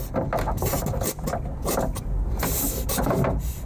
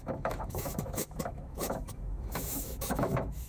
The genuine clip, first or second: first